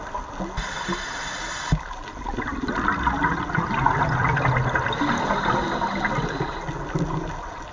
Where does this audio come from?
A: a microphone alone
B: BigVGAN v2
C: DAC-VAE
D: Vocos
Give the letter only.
A